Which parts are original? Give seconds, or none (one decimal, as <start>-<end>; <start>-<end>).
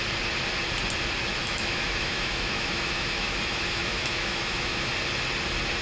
0.0-1.4; 4.9-5.8